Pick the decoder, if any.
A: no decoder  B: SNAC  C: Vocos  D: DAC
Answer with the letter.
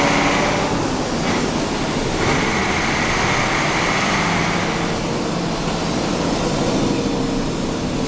A